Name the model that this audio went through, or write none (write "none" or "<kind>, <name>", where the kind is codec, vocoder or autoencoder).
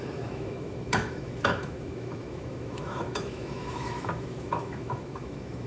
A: autoencoder, DAC-VAE